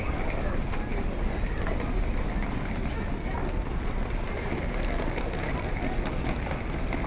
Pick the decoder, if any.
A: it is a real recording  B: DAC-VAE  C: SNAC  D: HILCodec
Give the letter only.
A